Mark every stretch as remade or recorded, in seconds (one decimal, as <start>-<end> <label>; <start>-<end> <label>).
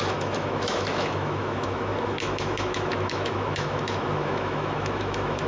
0.0-5.5 remade